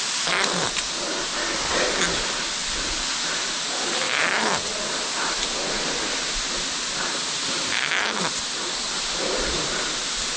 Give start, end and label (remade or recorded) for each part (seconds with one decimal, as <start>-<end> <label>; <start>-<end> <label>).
0.0-10.4 recorded